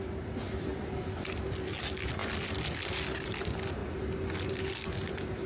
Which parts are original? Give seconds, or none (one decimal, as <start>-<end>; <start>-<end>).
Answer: 0.0-5.5

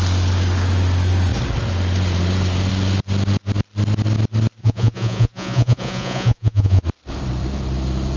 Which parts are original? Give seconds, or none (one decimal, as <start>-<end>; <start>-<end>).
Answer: 0.0-4.6; 6.8-8.2

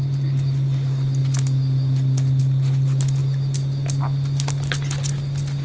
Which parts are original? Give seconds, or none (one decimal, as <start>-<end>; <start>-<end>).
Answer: 0.0-5.6

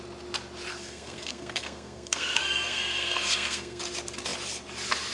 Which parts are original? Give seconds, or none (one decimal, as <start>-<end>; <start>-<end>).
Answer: 0.0-0.7; 3.8-5.1

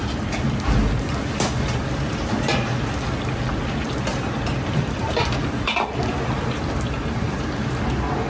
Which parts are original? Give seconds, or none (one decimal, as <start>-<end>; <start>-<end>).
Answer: 0.0-4.1; 6.3-8.3

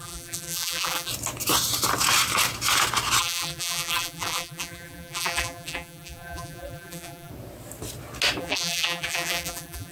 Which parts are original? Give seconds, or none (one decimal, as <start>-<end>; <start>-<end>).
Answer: 1.1-3.2; 7.3-8.4

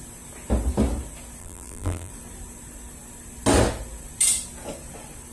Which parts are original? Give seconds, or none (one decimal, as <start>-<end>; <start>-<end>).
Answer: 0.0-1.4; 2.1-5.3

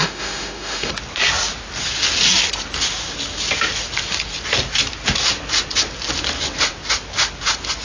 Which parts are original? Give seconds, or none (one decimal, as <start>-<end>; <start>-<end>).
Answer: 0.9-7.8